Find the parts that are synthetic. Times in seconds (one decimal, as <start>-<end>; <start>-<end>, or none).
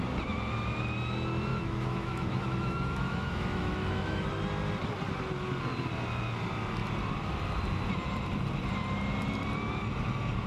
1.5-4.3